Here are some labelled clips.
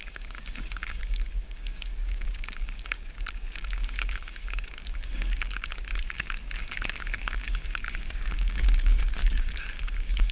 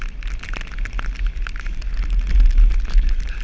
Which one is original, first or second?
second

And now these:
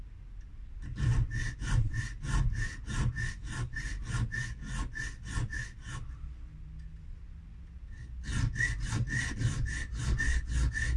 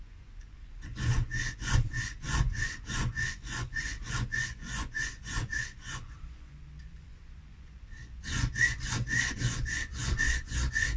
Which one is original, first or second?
first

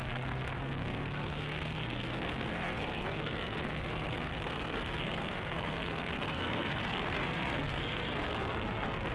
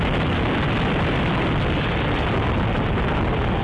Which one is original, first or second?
second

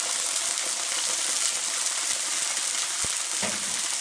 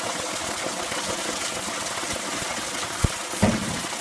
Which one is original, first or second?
first